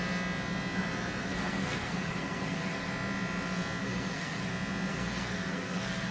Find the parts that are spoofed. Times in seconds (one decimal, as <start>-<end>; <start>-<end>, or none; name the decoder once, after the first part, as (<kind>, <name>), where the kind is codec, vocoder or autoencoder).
1.2-2.9 (codec, SNAC); 3.8-4.5; 4.9-6.1